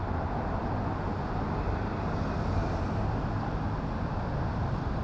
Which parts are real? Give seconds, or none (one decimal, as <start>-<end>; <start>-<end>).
0.0-5.0